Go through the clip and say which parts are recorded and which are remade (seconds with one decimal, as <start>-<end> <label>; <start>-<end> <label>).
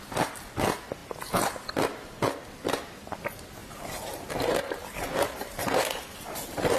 0.0-3.6 recorded; 3.6-6.0 remade; 6.0-6.8 recorded